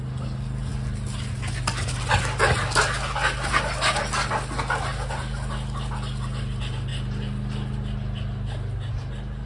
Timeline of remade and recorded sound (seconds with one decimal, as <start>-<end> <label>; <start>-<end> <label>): 0.0-9.5 recorded